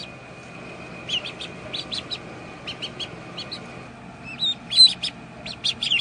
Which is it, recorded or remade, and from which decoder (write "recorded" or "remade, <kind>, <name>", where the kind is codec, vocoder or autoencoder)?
recorded